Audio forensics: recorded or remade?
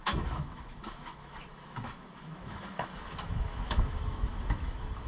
remade